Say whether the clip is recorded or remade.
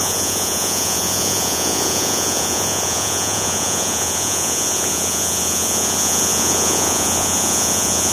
remade